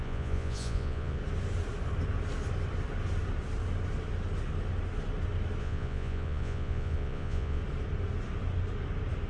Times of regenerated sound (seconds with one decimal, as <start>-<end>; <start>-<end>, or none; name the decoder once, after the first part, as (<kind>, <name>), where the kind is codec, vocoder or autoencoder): 0.0-1.2 (vocoder, Vocos); 5.6-7.6